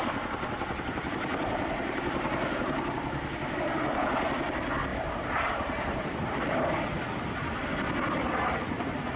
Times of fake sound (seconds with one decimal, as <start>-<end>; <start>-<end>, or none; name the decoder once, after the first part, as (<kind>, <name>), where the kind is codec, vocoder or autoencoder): 1.3-3.6 (vocoder, BigVGAN v2); 4.9-6.3